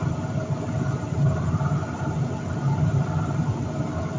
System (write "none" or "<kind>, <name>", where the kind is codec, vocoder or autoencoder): none